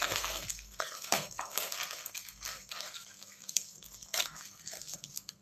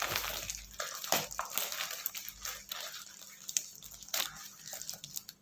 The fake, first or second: first